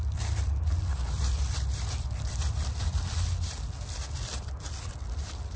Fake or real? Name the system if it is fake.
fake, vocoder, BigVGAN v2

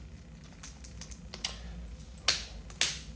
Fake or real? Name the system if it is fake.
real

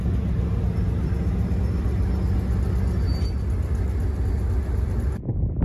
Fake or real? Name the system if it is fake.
real